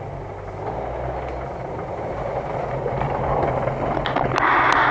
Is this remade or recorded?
recorded